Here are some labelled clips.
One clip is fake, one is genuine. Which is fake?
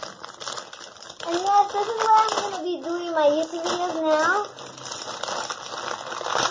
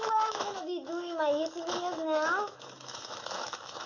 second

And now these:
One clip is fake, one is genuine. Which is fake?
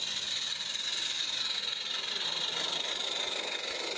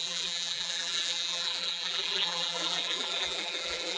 second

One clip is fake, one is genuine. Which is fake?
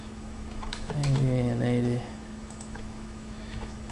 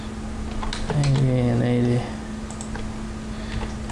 first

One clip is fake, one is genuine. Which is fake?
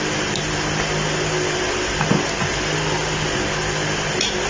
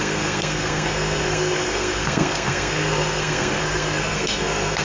second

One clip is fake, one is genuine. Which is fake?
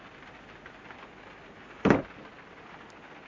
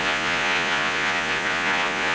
second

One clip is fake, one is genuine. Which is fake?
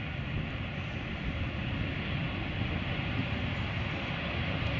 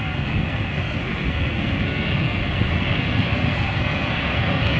second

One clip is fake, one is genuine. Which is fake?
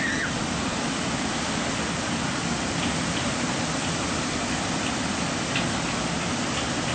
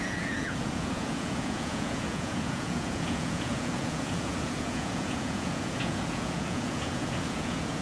second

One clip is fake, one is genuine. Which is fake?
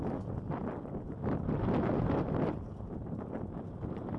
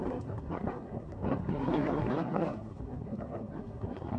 second